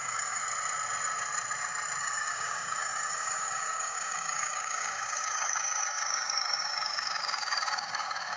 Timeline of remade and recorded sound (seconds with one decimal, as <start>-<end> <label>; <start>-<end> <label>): 0.0-0.4 remade; 0.4-2.0 recorded; 2.0-8.4 remade